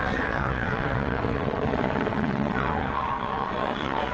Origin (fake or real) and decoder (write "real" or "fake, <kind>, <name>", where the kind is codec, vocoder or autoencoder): fake, vocoder, WaveNeXt